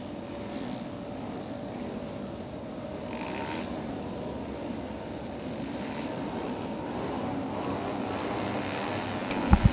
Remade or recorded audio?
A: recorded